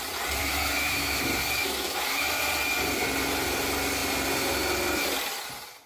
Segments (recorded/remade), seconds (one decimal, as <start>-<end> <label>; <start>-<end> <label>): 0.0-0.4 recorded; 0.4-1.2 remade; 1.2-1.6 recorded; 1.6-2.4 remade; 2.4-5.9 recorded